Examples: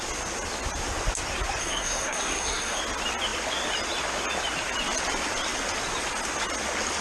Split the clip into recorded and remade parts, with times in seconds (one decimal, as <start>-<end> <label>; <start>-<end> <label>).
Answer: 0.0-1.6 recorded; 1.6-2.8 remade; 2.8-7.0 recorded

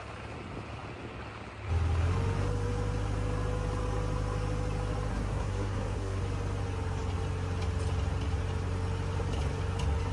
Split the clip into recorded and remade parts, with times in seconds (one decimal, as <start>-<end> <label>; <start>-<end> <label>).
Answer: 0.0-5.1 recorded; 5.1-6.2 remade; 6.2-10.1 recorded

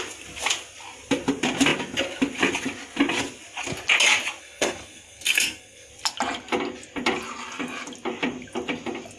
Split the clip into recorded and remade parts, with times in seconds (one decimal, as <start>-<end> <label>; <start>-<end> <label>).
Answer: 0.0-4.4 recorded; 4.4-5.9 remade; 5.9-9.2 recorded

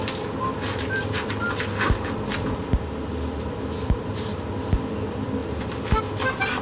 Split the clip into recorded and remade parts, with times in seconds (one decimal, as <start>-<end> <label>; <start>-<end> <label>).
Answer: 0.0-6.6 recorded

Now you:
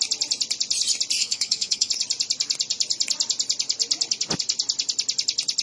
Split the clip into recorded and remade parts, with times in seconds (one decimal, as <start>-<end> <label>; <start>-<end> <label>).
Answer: 0.0-1.2 recorded; 1.2-1.9 remade; 1.9-5.6 recorded